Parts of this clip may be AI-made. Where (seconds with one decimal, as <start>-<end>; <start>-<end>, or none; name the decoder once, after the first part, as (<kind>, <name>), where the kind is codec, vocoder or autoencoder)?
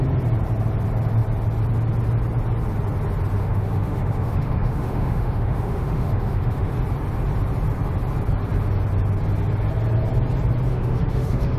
3.4-6.7 (autoencoder, DAC-VAE); 10.7-11.6